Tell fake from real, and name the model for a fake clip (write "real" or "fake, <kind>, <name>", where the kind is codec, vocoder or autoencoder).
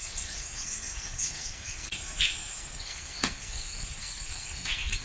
fake, codec, SNAC